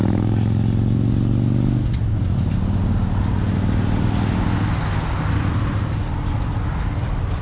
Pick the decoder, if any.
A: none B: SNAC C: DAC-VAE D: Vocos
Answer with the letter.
A